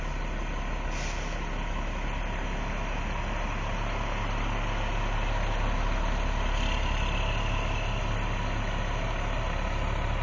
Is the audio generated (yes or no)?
no